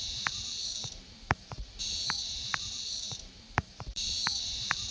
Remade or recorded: remade